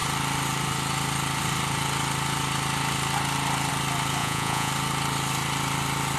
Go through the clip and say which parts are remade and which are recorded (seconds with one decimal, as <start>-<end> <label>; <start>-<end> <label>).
0.0-4.2 recorded; 4.2-4.7 remade; 4.7-6.2 recorded